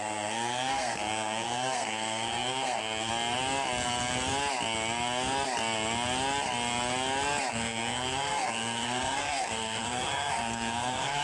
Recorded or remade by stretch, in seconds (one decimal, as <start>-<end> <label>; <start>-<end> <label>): 0.0-3.1 remade; 3.1-7.5 recorded; 7.5-11.2 remade